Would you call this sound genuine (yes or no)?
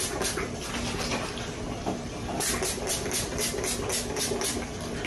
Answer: yes